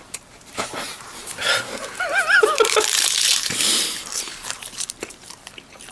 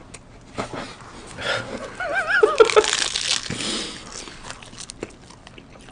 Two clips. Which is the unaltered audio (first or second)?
second